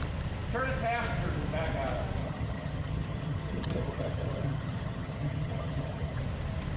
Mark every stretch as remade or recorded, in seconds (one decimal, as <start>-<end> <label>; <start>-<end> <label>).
0.0-2.2 recorded; 2.2-6.2 remade; 6.2-6.8 recorded